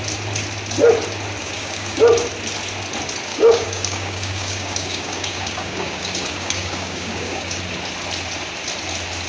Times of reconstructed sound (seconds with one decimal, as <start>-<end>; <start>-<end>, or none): 1.4-2.0; 3.3-7.6